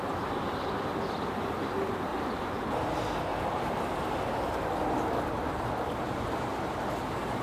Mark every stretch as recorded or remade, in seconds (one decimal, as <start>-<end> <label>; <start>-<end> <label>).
0.0-2.1 recorded; 2.1-2.7 remade; 2.7-3.3 recorded; 3.3-6.6 remade; 6.6-7.4 recorded